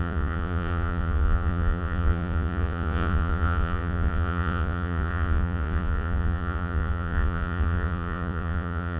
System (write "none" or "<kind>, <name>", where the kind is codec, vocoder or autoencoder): vocoder, Vocos